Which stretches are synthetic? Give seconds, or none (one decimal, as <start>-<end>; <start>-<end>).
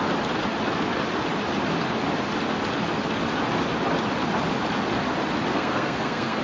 5.5-6.4